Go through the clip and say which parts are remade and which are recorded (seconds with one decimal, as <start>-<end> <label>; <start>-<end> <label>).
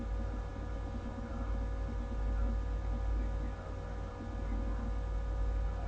0.0-5.9 recorded